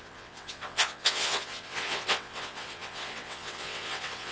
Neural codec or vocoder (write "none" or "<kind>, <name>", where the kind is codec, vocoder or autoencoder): vocoder, WaveNeXt